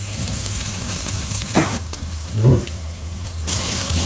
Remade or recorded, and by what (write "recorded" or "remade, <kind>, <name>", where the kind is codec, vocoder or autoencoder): remade, codec, SNAC